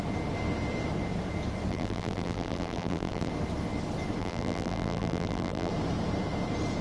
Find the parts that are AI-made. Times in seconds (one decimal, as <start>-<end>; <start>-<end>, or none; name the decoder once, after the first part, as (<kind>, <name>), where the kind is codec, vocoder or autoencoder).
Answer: 1.7-3.3 (vocoder, BigVGAN v2); 4.2-5.7